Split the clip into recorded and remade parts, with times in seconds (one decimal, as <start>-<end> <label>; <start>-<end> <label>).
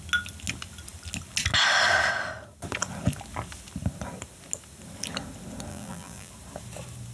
0.0-5.7 recorded; 5.7-6.3 remade; 6.3-7.1 recorded